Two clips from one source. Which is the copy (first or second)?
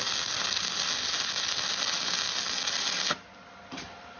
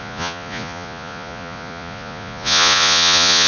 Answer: second